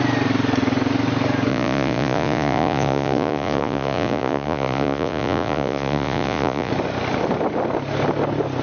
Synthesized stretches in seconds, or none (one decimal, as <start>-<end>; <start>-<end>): 1.5-6.7